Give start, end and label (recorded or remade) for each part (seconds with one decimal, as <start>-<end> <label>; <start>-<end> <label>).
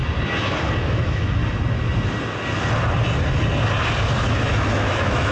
0.0-0.8 recorded; 0.8-1.4 remade; 1.4-4.3 recorded; 4.3-5.3 remade